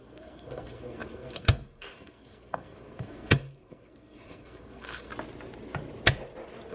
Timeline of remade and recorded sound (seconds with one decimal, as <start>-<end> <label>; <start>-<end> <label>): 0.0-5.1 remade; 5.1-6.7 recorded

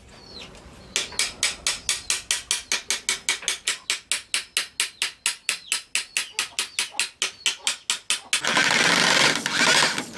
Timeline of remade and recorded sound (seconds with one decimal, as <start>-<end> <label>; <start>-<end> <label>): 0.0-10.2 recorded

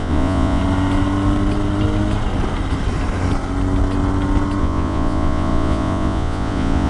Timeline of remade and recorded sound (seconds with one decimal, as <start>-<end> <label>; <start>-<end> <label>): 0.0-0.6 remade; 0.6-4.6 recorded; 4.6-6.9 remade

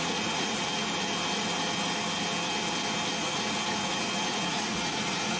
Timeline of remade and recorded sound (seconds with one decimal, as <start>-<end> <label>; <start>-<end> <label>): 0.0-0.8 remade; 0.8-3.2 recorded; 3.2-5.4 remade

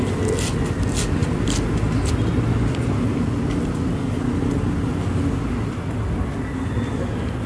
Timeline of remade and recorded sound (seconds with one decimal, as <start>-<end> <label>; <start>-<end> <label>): 0.0-7.5 recorded

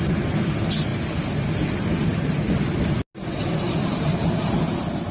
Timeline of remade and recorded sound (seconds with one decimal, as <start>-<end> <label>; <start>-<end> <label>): 0.0-5.1 recorded

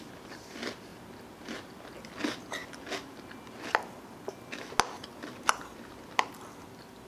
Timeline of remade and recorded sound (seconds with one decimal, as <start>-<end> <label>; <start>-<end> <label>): 0.0-7.1 recorded

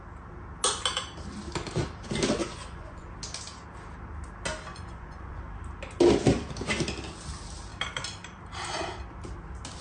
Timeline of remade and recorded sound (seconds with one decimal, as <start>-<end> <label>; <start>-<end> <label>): 0.0-2.4 recorded; 2.4-3.1 remade; 3.1-4.7 recorded; 4.7-5.4 remade; 5.4-9.8 recorded